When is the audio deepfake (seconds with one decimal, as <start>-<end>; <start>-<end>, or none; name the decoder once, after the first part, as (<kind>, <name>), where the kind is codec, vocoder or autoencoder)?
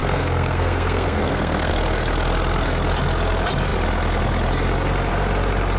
0.0-1.7 (codec, SNAC)